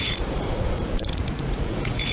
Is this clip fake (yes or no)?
yes